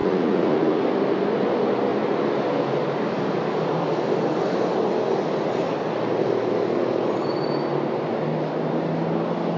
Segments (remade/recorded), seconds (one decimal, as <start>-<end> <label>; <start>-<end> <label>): 0.0-0.8 remade; 0.8-9.6 recorded